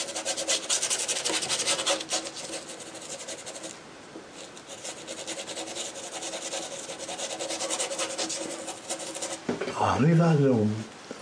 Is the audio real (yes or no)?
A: yes